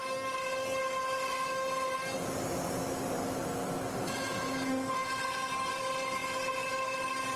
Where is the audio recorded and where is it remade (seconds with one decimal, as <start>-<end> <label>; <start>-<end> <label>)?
0.0-4.4 recorded; 4.4-5.0 remade; 5.0-5.8 recorded; 5.8-7.4 remade